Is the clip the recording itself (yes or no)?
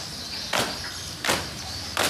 yes